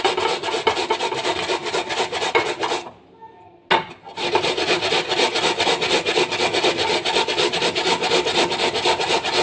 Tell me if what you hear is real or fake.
real